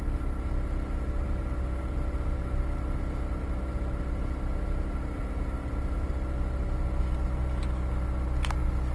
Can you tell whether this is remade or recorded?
recorded